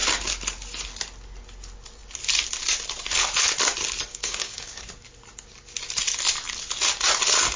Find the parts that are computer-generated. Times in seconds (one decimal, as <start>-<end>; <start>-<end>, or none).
4.1-4.8

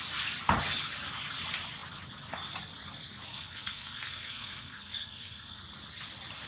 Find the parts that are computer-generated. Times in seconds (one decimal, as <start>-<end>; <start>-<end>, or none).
3.3-5.6

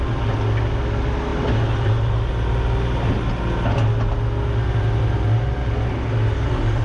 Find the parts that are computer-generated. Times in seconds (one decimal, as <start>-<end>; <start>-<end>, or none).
none

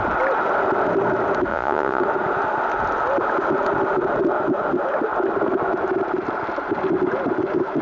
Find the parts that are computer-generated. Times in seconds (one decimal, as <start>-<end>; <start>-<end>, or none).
1.5-2.0

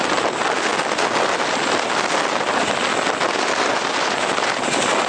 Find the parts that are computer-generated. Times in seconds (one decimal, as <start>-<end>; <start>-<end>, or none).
none